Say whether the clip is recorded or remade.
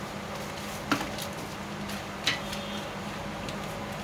recorded